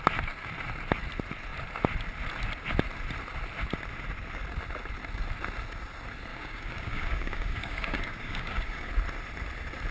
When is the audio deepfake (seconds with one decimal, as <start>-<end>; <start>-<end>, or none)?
6.3-8.9